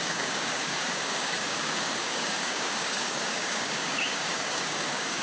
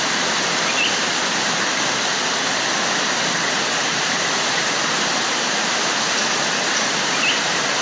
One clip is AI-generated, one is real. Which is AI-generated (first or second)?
first